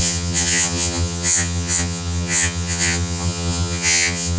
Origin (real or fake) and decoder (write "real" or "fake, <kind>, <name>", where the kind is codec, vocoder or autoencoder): fake, vocoder, HiFi-GAN